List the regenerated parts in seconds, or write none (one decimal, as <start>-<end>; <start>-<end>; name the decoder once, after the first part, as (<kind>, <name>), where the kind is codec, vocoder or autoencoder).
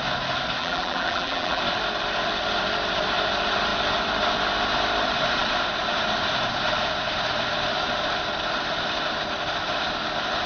0.6-1.6 (vocoder, BigVGAN v2)